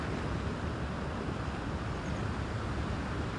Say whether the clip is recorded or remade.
recorded